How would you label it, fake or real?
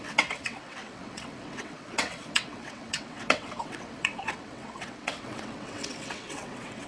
fake